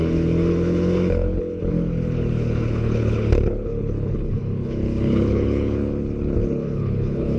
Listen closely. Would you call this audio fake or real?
fake